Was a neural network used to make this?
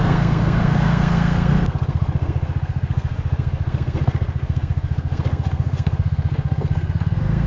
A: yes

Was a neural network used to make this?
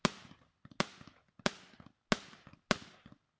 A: no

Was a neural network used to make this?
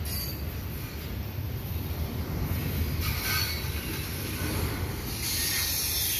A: no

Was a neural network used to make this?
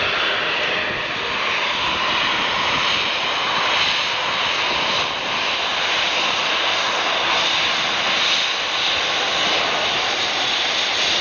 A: no